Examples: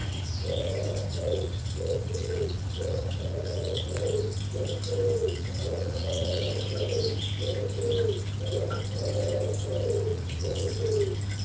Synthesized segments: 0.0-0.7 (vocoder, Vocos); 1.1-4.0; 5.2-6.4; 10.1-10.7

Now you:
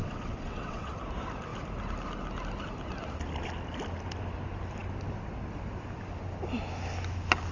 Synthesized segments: 0.0-1.0 (vocoder, WaveNeXt)

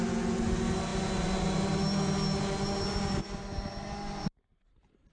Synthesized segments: none

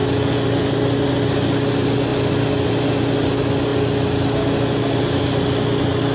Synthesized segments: none

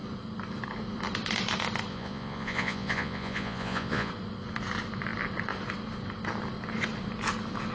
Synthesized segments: 1.9-4.1 (vocoder, Vocos)

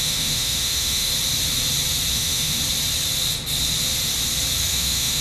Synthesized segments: 0.0-1.1 (autoencoder, DAC-VAE); 2.1-2.6; 4.7-5.2

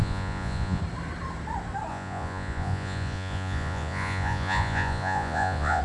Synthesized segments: 0.0-0.8 (vocoder, Vocos); 1.9-5.8